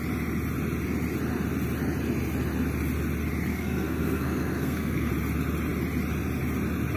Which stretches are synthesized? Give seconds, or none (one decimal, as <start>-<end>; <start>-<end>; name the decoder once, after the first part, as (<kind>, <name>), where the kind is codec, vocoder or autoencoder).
3.5-5.1 (codec, SNAC)